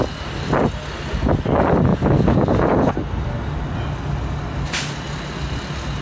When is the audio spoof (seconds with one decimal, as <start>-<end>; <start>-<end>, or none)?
1.9-2.9